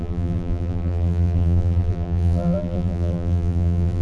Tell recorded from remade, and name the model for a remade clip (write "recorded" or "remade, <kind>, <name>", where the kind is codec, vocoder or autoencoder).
remade, vocoder, BigVGAN v2